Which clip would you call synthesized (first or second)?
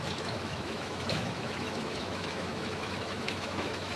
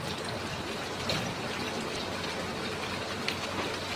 first